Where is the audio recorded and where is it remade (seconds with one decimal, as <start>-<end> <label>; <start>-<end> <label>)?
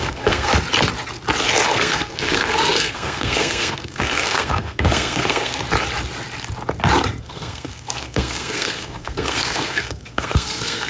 0.0-0.5 remade; 0.5-1.7 recorded; 1.7-5.6 remade; 5.6-7.2 recorded; 7.2-10.9 remade